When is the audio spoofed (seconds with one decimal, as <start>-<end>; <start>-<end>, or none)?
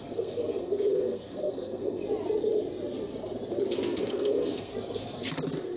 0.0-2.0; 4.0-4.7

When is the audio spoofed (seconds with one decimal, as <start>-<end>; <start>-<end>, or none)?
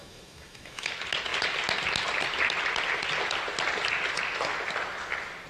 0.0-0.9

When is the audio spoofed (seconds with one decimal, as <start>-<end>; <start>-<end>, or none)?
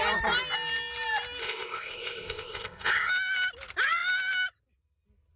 1.4-3.1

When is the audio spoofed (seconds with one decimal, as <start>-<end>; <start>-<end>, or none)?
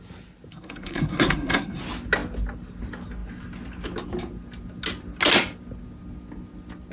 0.5-1.8